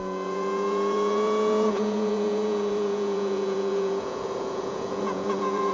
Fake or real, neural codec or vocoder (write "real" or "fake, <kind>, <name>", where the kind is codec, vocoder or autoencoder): fake, vocoder, Vocos